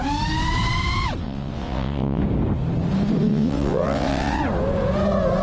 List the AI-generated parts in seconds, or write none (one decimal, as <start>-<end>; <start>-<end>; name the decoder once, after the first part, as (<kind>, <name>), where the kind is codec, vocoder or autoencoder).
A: 1.2-2.2 (vocoder, WaveNeXt); 3.3-4.4